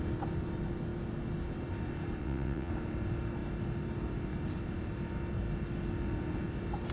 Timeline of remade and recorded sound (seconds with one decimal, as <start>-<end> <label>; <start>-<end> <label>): 0.0-2.2 recorded; 2.2-2.7 remade; 2.7-6.9 recorded